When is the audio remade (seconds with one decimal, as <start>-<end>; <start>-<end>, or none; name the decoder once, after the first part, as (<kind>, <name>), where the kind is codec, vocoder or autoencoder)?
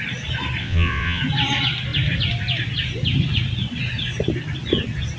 0.6-1.2 (vocoder, WaveNeXt)